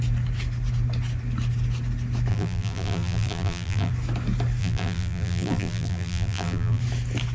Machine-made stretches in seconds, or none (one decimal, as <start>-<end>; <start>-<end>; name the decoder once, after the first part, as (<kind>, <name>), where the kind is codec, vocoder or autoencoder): 2.3-3.9 (vocoder, BigVGAN v2); 4.6-6.8